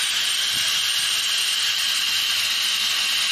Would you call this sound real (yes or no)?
yes